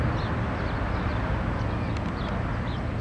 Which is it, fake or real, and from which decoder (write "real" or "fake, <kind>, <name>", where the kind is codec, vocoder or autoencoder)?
real